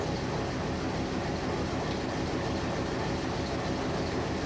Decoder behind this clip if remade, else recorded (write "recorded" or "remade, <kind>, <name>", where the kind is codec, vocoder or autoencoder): recorded